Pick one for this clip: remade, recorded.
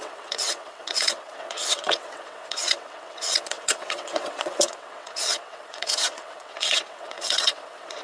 remade